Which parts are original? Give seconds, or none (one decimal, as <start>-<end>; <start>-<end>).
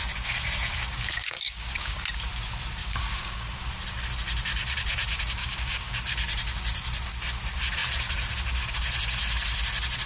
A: 0.0-0.7; 2.0-2.8; 3.7-5.4; 6.0-10.1